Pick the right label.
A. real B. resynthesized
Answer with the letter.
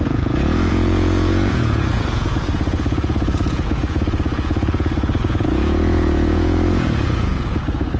B